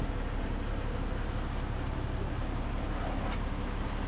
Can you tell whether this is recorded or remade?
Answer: recorded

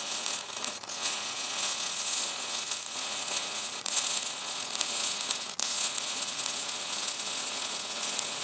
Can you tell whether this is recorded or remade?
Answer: remade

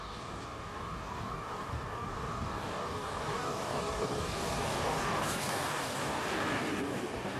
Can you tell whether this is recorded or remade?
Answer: remade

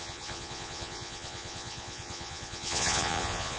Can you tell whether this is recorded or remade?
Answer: remade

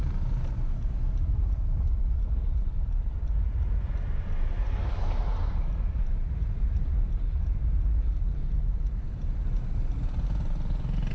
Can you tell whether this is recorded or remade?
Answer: remade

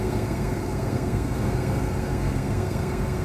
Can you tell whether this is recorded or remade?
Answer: remade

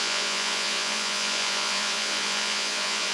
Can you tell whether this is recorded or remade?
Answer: remade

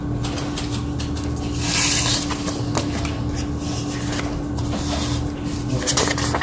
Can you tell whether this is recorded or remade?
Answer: recorded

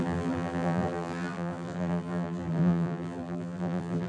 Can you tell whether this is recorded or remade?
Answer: remade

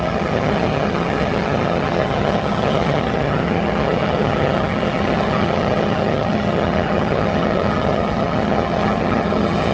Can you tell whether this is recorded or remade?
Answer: remade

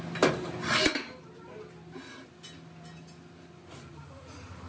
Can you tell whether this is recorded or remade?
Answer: recorded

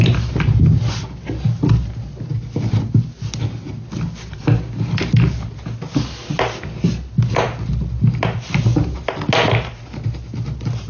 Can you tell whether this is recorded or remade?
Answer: recorded